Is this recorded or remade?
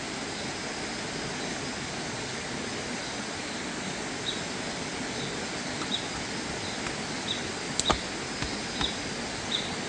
recorded